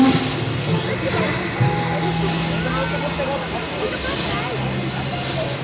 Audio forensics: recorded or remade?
recorded